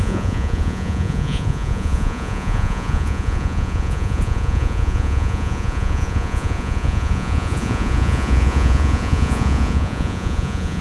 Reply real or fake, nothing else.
fake